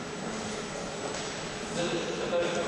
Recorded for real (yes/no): yes